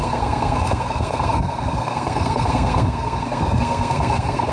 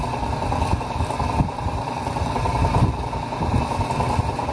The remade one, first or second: first